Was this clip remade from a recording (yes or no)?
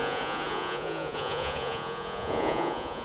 yes